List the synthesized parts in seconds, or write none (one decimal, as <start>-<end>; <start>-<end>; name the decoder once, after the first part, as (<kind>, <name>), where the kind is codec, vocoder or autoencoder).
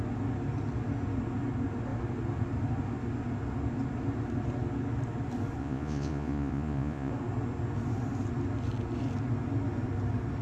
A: 5.6-7.1 (vocoder, Vocos)